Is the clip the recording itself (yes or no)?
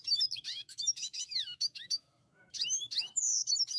no